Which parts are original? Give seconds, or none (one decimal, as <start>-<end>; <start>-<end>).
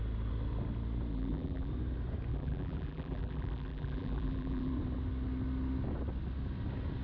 0.0-1.1; 1.7-2.3; 4.7-7.0